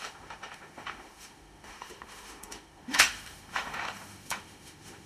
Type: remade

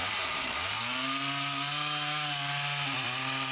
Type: recorded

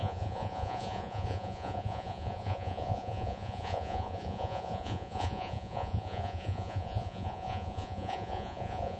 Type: remade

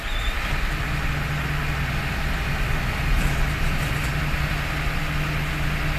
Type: recorded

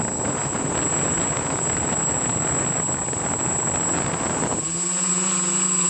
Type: recorded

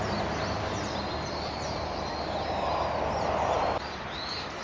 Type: recorded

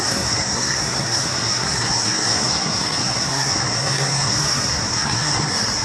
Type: remade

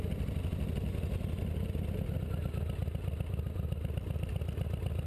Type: recorded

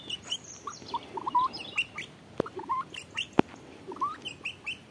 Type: recorded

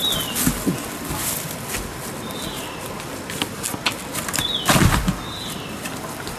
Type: recorded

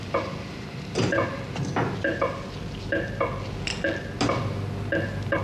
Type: recorded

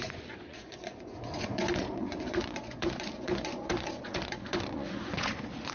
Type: remade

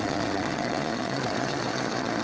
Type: remade